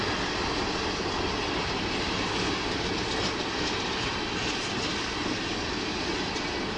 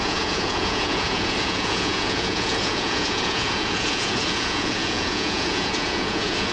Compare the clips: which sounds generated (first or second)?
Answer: second